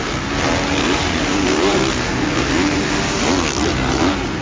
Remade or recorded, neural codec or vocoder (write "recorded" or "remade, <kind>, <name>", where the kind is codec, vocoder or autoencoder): recorded